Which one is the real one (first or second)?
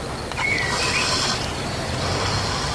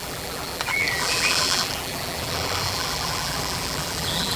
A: first